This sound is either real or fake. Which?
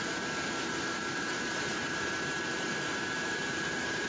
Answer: fake